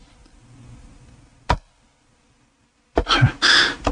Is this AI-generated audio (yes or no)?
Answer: no